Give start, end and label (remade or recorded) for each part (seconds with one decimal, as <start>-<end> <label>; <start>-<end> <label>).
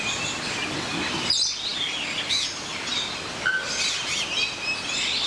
0.0-5.3 recorded